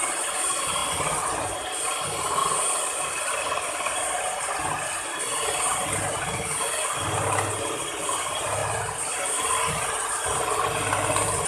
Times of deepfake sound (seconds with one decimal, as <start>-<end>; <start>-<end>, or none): none